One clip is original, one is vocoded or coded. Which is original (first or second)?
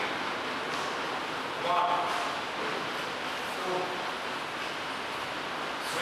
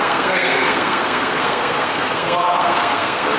first